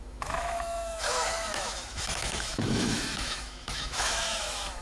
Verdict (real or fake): fake